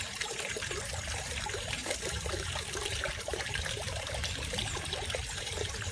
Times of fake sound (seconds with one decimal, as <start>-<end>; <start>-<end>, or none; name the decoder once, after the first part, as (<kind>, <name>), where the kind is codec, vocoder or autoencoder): 0.0-5.9 (vocoder, BigVGAN v2)